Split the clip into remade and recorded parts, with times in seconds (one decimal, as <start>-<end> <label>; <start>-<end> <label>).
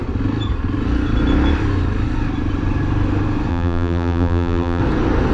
0.0-3.5 recorded; 3.5-4.8 remade; 4.8-5.3 recorded